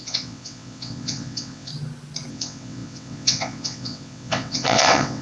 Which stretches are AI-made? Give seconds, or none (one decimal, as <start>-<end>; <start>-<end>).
0.0-1.7; 2.3-5.2